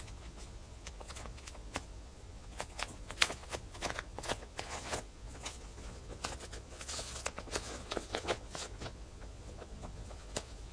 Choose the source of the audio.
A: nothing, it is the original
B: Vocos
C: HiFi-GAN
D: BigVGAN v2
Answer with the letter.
B